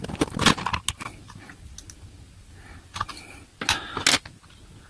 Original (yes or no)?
yes